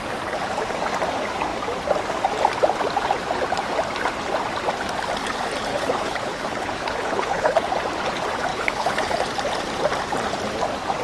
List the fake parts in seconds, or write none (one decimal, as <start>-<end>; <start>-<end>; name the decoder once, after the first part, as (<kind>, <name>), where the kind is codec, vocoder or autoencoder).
5.7-7.7 (codec, HILCodec); 8.5-9.2